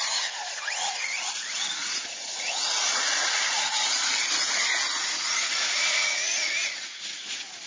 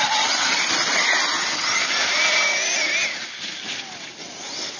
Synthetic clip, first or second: first